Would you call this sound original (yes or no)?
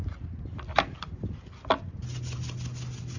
yes